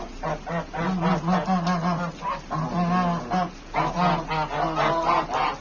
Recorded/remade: recorded